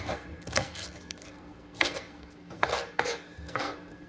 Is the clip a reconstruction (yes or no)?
yes